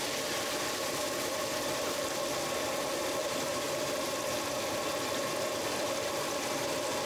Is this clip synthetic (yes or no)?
yes